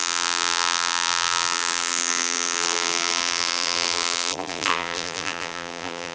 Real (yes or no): no